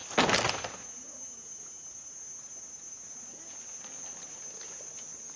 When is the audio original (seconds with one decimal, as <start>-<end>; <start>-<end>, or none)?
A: 0.0-5.4